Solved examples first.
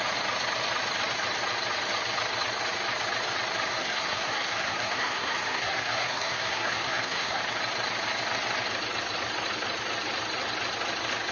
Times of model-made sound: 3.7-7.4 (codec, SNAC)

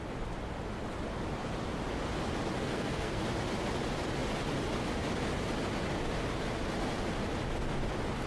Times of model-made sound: 2.6-3.2 (codec, SNAC)